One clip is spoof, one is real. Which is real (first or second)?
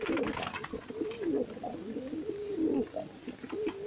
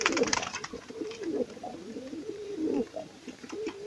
first